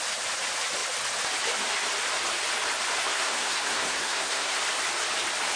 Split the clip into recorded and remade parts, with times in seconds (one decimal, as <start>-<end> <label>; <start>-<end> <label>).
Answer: 0.0-3.1 recorded; 3.1-4.6 remade; 4.6-5.6 recorded